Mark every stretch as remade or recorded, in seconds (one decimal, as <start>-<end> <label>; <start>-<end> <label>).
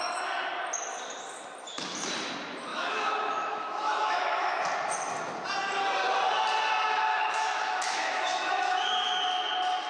0.0-2.7 recorded; 2.7-4.6 remade; 4.6-7.1 recorded; 7.1-9.2 remade; 9.2-9.9 recorded